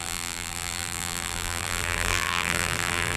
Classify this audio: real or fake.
fake